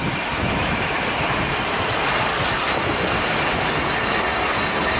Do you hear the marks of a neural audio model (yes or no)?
no